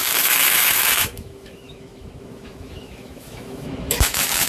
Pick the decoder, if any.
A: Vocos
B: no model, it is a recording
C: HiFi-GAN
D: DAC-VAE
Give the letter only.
D